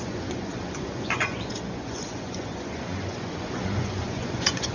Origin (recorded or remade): remade